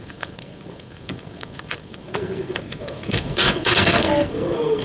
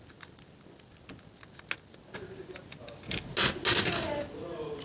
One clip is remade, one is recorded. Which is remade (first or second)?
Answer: first